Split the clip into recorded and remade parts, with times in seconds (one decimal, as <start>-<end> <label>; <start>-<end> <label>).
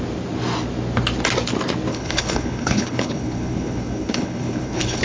0.0-1.9 recorded; 1.9-5.0 remade